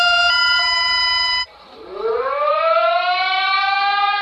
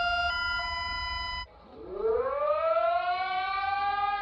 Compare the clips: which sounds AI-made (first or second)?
first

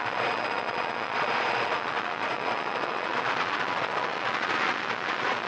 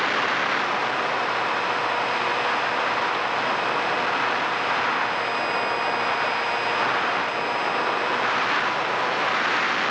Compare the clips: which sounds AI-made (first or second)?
first